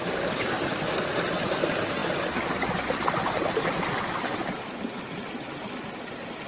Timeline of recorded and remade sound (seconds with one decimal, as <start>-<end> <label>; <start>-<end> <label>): 0.0-0.6 remade; 0.6-6.5 recorded